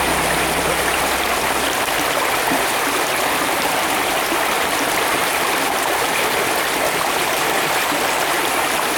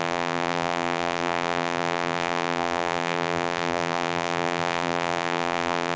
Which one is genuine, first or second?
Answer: first